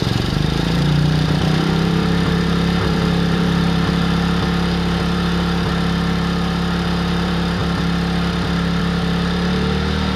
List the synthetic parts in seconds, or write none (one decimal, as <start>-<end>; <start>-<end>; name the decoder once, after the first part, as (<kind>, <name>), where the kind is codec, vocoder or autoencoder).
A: 0.0-7.6 (vocoder, BigVGAN v2); 8.8-10.2